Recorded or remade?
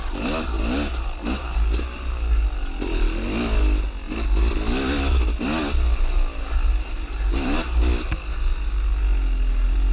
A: recorded